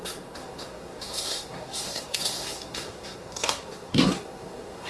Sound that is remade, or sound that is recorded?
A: remade